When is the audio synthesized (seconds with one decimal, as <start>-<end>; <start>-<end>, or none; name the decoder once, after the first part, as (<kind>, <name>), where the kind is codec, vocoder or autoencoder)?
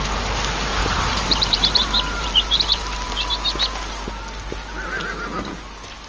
0.8-3.3 (vocoder, BigVGAN v2)